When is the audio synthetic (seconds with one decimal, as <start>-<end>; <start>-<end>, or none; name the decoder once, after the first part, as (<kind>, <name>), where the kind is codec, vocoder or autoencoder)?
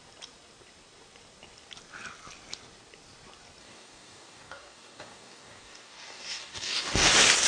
3.6-7.1 (codec, DAC)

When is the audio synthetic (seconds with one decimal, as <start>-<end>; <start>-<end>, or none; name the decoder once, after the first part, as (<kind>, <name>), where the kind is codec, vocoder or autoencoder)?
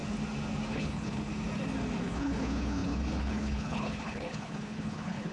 0.7-1.3 (codec, HILCodec); 2.0-5.3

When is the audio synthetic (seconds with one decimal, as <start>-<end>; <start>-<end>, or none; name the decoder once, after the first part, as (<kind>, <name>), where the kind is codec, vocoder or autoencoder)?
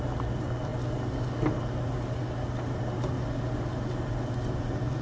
none